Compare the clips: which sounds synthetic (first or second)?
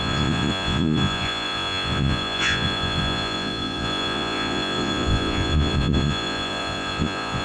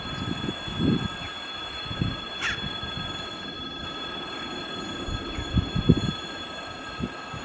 first